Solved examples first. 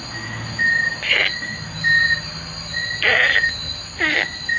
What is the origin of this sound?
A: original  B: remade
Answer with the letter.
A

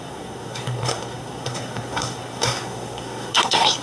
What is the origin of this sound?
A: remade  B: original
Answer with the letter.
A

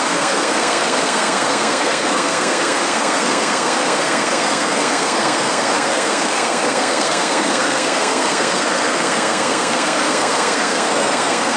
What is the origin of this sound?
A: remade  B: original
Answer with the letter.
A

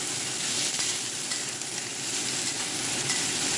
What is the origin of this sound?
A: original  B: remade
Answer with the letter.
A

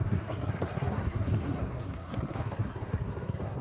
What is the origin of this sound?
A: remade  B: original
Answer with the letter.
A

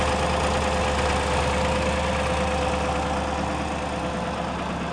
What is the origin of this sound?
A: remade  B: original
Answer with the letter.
B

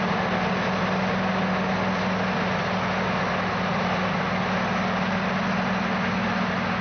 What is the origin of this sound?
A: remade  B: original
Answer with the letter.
B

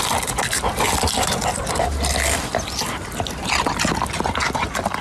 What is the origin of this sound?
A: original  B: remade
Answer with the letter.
A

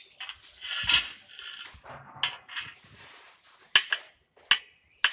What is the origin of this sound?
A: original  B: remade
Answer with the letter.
A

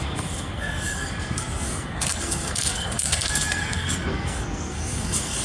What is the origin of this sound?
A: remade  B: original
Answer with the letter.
A